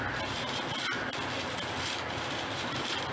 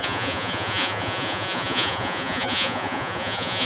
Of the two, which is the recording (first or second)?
first